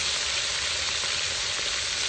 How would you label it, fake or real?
real